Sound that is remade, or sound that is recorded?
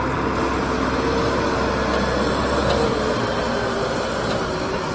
recorded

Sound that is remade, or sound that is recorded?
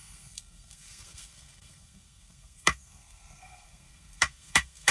remade